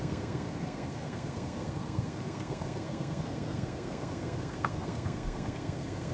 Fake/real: fake